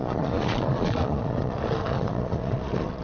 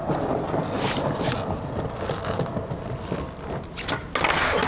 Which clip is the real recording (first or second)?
second